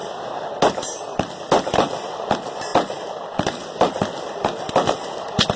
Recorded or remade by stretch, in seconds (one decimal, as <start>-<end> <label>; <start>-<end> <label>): 0.0-5.6 recorded